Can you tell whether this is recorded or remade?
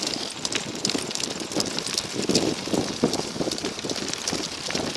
recorded